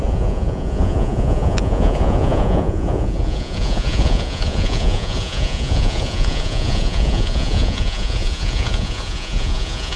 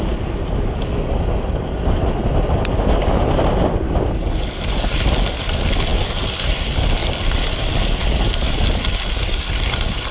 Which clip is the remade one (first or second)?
first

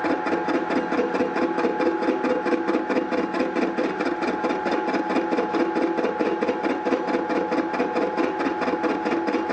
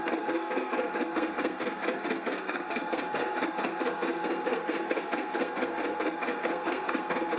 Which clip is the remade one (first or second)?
second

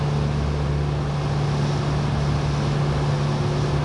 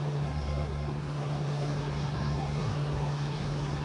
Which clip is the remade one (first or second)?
second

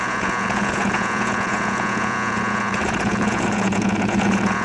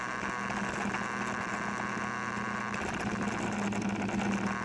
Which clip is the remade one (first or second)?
first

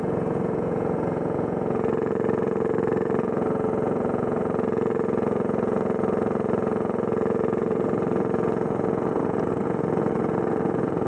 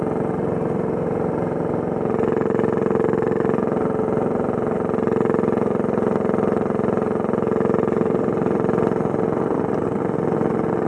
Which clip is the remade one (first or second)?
first